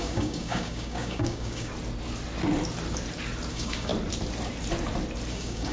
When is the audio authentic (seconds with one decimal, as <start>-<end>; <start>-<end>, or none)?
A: 1.7-3.5; 3.9-5.3